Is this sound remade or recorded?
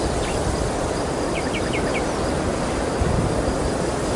recorded